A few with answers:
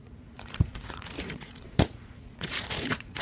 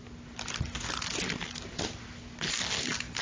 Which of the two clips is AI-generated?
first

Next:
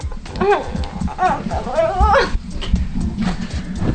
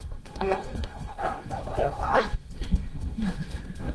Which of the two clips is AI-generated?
second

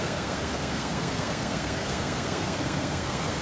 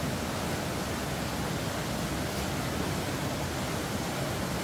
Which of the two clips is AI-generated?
first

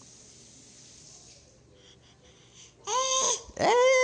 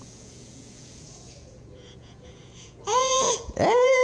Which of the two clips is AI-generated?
second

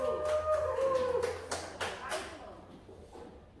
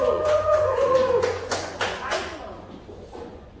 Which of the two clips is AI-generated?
second